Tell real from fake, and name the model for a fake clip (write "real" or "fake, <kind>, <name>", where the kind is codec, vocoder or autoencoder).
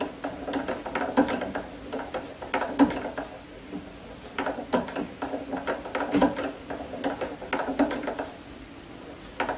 real